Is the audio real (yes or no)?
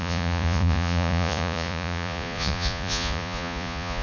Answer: no